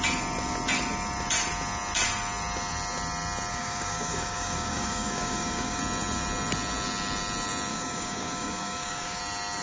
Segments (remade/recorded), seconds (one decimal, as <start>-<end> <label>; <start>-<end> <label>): 0.0-3.5 recorded; 3.5-5.8 remade; 5.8-7.7 recorded; 7.7-9.2 remade; 9.2-9.6 recorded

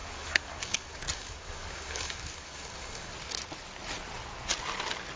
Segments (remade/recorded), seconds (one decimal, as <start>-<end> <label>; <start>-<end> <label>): 0.0-3.1 remade; 3.1-5.2 recorded

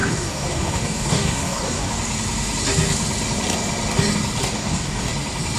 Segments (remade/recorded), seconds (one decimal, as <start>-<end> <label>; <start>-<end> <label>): 0.0-1.9 remade; 1.9-4.4 recorded; 4.4-5.1 remade; 5.1-5.6 recorded

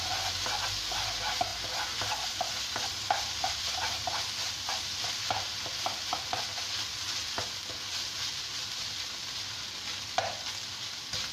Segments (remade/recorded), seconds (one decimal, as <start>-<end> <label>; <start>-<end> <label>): 0.0-11.3 recorded

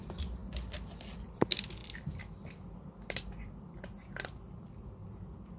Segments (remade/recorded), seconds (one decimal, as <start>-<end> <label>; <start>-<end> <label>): 0.0-5.6 recorded

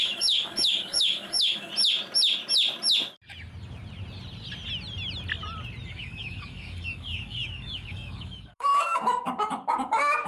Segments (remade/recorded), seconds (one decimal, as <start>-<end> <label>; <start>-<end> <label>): 0.0-1.7 remade; 1.7-5.9 recorded; 5.9-10.3 remade